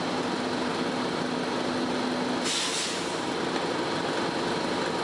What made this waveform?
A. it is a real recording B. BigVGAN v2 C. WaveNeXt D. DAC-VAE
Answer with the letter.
A